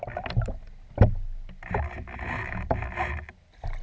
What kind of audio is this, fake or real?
real